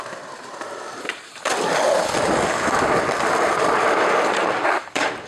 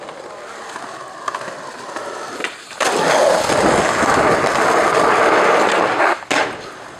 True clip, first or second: second